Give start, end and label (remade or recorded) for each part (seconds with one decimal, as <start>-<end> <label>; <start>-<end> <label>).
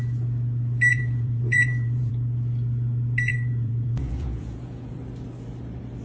0.0-0.9 recorded; 0.9-2.1 remade; 2.1-3.3 recorded; 3.3-4.9 remade; 4.9-6.0 recorded